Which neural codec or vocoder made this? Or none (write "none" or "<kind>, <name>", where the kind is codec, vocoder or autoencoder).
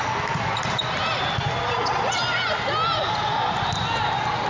none